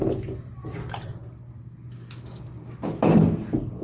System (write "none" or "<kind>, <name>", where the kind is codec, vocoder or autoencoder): none